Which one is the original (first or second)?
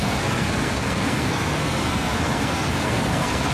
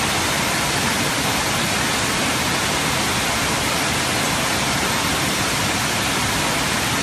second